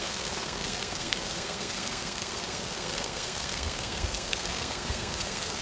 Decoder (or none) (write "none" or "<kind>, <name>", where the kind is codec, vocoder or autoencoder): codec, SNAC